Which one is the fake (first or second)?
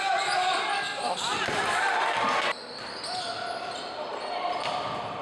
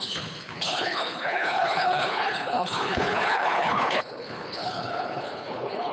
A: second